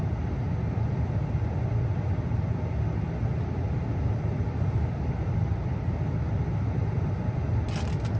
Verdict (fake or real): real